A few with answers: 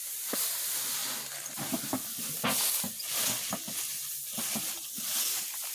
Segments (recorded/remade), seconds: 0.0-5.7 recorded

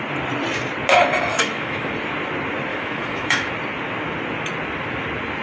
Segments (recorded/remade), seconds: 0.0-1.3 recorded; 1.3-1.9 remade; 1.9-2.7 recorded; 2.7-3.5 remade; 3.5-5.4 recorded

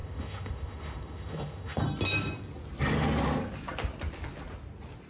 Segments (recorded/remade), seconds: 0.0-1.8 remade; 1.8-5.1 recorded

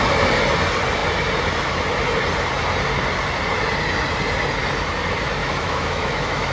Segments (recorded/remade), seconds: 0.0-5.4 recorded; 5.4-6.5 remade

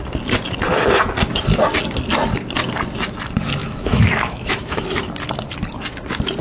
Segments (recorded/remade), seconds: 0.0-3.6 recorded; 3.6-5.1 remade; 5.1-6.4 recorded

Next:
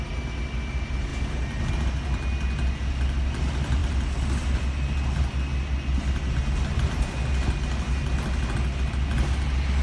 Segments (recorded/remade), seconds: 0.0-9.8 recorded

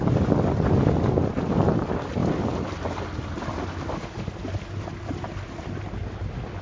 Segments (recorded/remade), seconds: 0.0-6.6 recorded

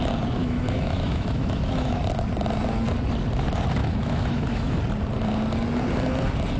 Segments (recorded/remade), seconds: 0.0-0.4 recorded; 0.4-2.0 remade; 2.0-3.8 recorded; 3.8-4.8 remade; 4.8-6.6 recorded